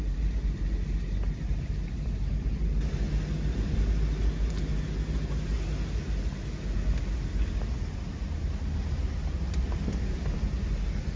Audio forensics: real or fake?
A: real